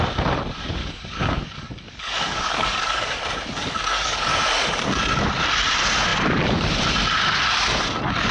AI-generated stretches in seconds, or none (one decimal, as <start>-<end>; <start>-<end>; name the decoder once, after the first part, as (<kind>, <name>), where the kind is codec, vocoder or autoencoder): 0.8-3.2 (codec, DAC); 3.6-4.4